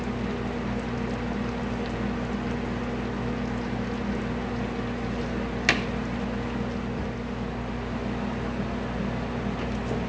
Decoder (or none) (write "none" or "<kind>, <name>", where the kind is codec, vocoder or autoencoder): none